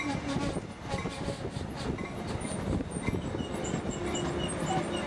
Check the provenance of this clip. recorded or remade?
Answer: recorded